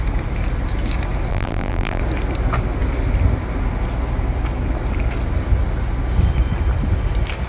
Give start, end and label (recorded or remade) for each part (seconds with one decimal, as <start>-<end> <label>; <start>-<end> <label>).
0.0-1.3 recorded; 1.3-2.0 remade; 2.0-7.5 recorded